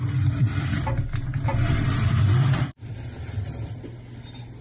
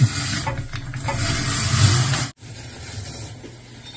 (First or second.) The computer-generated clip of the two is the first